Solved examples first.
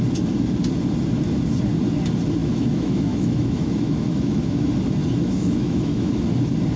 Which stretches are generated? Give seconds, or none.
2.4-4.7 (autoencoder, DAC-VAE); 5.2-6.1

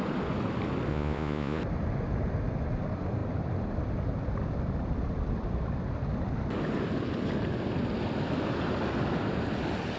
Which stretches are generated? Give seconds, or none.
0.9-1.6 (vocoder, Vocos)

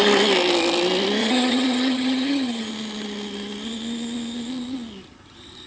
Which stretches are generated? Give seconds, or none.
1.2-2.7 (vocoder, HiFi-GAN)